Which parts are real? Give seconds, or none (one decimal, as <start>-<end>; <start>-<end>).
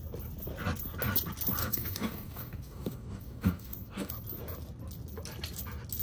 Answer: 0.0-1.6; 4.1-6.0